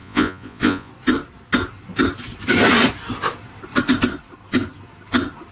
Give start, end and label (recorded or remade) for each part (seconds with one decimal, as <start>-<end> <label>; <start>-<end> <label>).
0.0-0.9 remade; 0.9-5.5 recorded